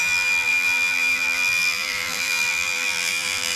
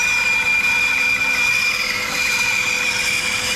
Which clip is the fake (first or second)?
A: first